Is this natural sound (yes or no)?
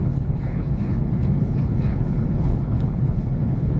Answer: no